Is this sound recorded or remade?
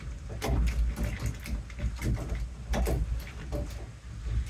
recorded